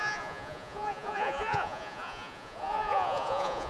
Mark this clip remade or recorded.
remade